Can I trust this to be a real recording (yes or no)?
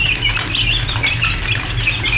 yes